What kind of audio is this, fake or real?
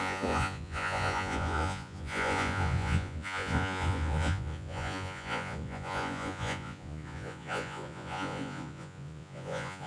fake